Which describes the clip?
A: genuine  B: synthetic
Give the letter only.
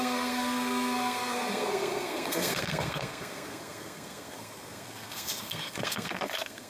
B